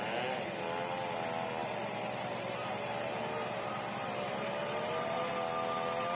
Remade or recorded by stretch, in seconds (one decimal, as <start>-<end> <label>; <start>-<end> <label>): 0.0-1.6 recorded; 1.6-5.3 remade; 5.3-6.1 recorded